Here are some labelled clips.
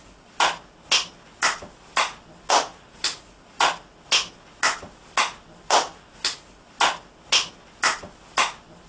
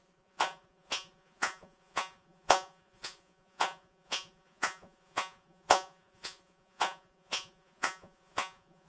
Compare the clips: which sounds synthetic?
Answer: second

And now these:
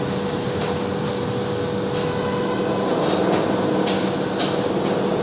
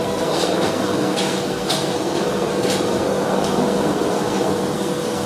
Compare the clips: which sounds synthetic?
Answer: second